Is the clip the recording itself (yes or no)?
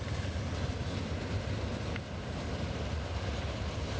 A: yes